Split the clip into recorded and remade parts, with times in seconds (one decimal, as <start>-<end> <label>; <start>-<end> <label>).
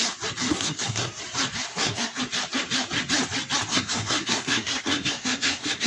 0.0-0.5 recorded; 0.5-1.2 remade; 1.2-1.7 recorded; 1.7-2.2 remade; 2.2-3.7 recorded; 3.7-5.9 remade